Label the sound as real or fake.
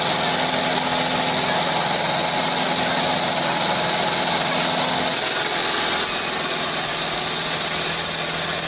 real